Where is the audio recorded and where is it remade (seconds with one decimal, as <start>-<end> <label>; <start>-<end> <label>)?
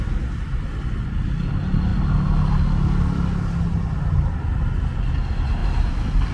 0.0-6.3 recorded